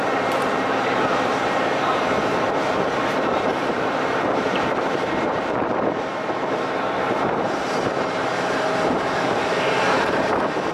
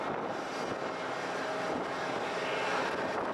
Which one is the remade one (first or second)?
first